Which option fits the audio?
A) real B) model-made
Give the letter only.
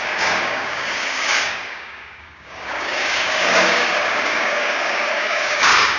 B